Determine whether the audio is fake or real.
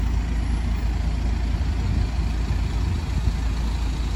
real